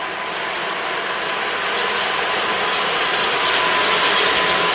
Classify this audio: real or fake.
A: real